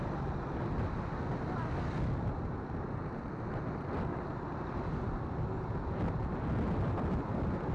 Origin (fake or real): real